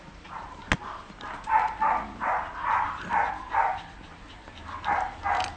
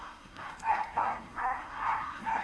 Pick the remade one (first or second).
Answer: second